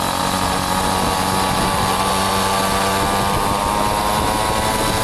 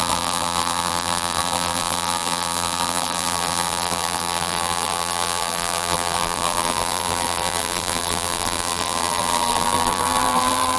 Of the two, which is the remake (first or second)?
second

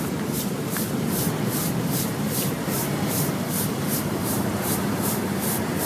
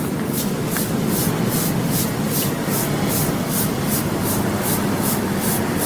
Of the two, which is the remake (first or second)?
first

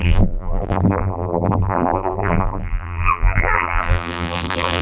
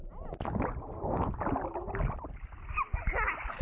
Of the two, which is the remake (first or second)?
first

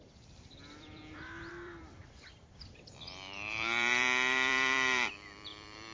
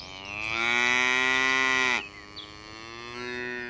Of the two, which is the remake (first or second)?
first